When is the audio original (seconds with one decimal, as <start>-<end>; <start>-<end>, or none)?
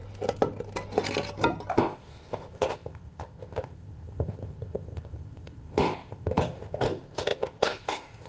0.0-1.7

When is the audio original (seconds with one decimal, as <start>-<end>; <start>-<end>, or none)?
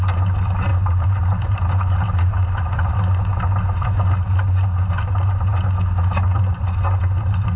0.0-0.7; 2.9-7.6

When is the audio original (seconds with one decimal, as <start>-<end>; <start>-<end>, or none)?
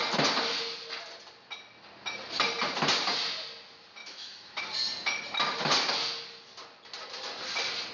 0.0-4.0; 4.6-7.9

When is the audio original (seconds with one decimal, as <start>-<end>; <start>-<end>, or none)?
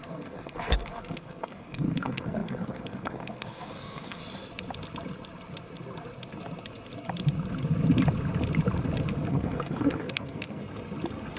4.2-9.3; 10.6-11.4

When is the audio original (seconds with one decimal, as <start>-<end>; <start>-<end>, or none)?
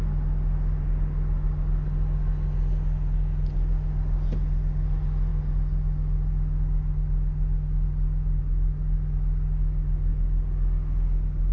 0.0-11.5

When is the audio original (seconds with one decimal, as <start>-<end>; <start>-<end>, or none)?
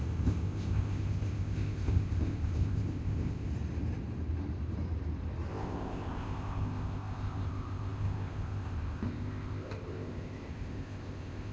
3.5-5.5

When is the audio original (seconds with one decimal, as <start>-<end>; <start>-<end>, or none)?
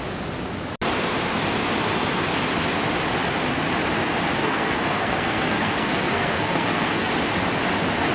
0.0-4.4; 7.1-8.1